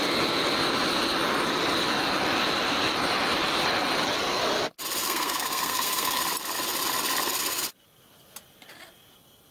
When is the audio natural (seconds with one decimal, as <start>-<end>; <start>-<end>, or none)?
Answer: 0.0-5.0; 6.2-9.5